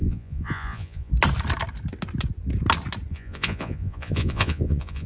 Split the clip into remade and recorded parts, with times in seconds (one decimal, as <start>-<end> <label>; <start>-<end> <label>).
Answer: 0.0-1.1 remade; 1.1-3.1 recorded; 3.1-5.1 remade